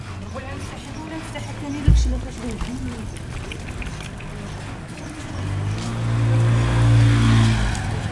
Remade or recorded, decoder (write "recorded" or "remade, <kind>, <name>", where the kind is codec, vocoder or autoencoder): recorded